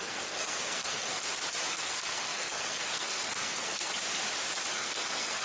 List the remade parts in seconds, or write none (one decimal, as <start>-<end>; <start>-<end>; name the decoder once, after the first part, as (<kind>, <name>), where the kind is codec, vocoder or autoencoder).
0.0-1.2 (codec, SNAC); 1.7-3.9; 4.7-5.4